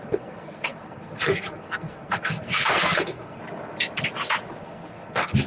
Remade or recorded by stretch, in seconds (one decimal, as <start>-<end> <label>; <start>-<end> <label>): 0.0-3.4 remade; 3.4-4.6 recorded; 4.6-5.5 remade